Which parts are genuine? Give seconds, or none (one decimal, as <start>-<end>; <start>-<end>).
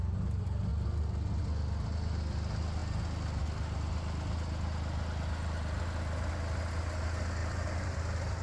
0.0-7.4